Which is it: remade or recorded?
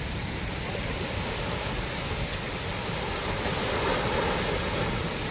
recorded